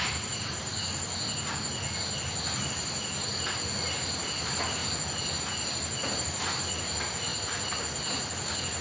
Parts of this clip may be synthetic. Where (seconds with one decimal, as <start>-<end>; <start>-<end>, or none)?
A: 0.0-0.7; 2.5-4.8; 5.4-7.3